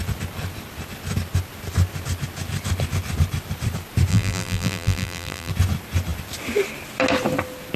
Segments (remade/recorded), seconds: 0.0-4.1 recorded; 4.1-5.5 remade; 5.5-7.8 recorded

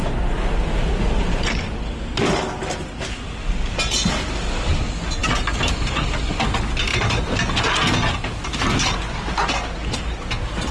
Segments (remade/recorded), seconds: 0.0-10.7 recorded

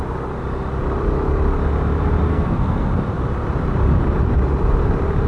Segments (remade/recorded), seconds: 0.0-2.3 recorded; 2.3-2.9 remade; 2.9-5.3 recorded

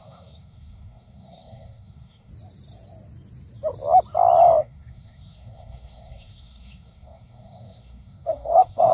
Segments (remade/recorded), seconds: 0.0-2.3 remade; 2.3-4.6 recorded; 4.6-8.9 remade

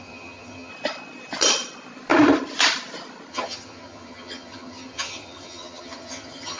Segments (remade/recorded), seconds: 0.0-0.7 remade; 0.7-3.3 recorded; 3.3-6.6 remade

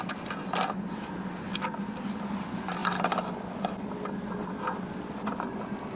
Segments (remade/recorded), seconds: 0.0-6.0 recorded

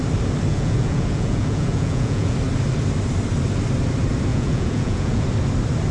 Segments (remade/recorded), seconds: 0.0-0.5 recorded; 0.5-2.3 remade; 2.3-4.3 recorded; 4.3-5.2 remade; 5.2-5.9 recorded

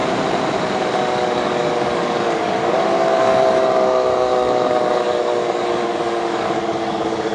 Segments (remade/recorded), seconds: 0.0-0.9 recorded; 0.9-7.3 remade